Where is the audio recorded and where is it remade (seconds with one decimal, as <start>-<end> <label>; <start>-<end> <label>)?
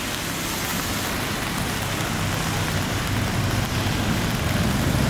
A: 0.0-5.1 recorded